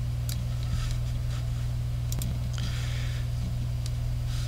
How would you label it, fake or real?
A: real